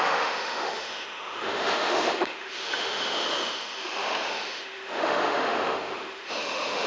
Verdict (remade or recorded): remade